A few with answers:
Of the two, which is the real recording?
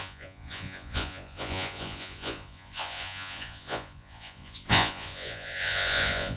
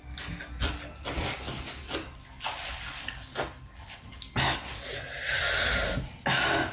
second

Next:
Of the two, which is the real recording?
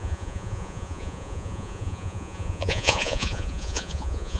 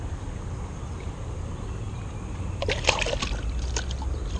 second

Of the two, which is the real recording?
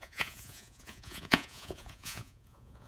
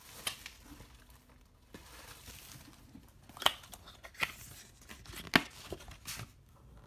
second